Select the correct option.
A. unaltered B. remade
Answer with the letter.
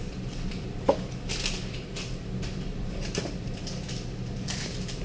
B